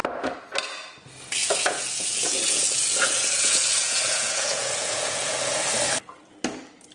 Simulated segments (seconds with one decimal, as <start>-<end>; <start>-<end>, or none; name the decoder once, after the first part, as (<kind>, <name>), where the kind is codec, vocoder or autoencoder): 1.4-5.5 (vocoder, Vocos)